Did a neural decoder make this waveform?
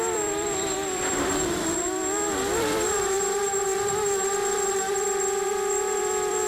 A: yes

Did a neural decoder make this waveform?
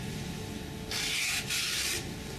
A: no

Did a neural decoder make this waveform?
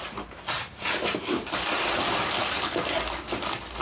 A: no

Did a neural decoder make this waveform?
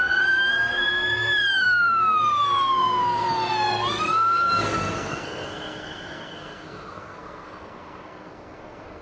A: yes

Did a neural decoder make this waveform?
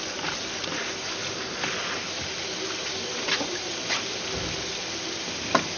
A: no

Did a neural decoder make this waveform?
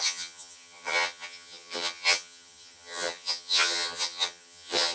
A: yes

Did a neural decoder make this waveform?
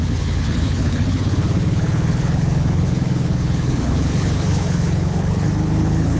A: yes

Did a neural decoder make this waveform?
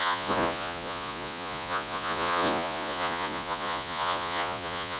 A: yes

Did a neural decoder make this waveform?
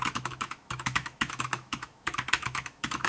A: yes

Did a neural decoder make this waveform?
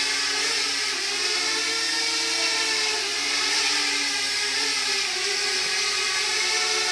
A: no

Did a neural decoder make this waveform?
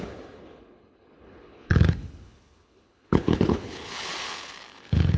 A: yes